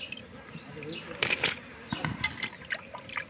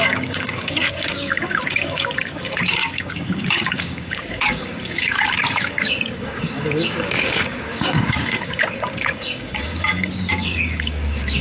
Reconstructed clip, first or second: second